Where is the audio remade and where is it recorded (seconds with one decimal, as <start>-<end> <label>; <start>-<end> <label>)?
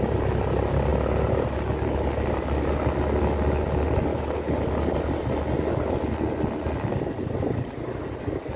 0.0-4.1 recorded; 4.1-4.6 remade; 4.6-8.6 recorded